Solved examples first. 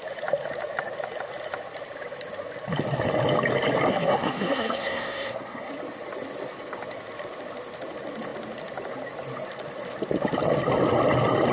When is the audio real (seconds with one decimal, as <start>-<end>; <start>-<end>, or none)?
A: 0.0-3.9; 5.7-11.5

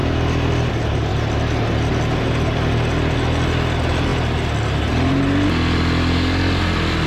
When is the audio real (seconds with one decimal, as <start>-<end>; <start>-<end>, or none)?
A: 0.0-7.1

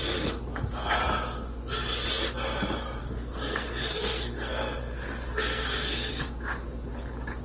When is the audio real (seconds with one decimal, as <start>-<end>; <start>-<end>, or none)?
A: 0.0-3.0; 6.1-7.4